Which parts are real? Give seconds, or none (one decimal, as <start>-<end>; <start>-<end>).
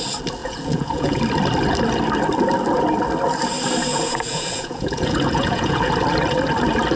0.0-0.4; 1.2-3.9; 5.9-7.0